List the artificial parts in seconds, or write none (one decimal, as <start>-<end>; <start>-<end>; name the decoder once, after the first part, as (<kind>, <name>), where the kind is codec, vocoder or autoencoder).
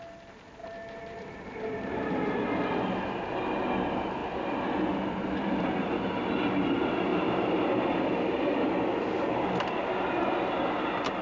0.6-2.2 (vocoder, BigVGAN v2); 7.1-7.7